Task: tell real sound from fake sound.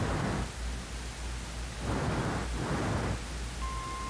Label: real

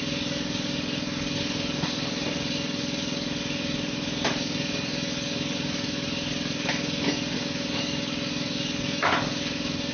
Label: fake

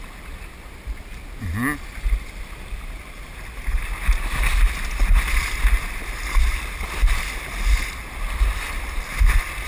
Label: real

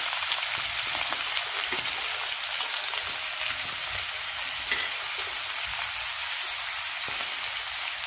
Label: real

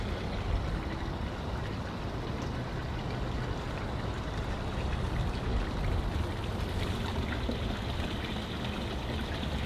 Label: real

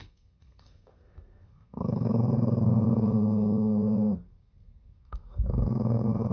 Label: fake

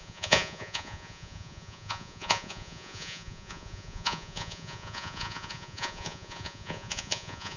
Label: fake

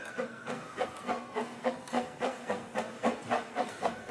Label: fake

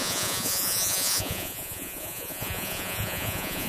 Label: fake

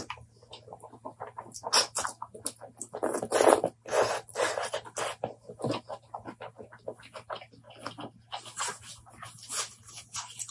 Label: real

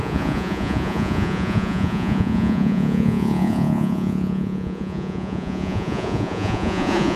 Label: fake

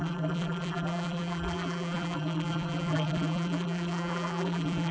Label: fake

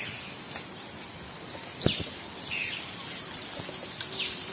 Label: real